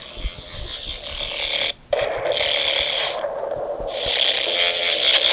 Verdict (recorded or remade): recorded